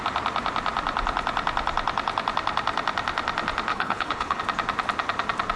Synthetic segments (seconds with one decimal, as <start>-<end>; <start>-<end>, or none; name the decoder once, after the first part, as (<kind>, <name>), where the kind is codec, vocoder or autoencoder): 3.7-4.4 (codec, HILCodec)